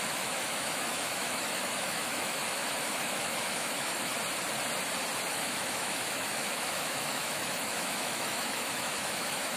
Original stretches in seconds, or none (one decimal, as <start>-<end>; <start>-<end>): 4.1-5.3